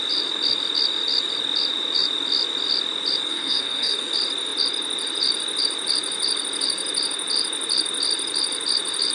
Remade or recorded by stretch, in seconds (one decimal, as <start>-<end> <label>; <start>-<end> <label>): 0.0-3.3 recorded; 3.3-4.1 remade; 4.1-9.1 recorded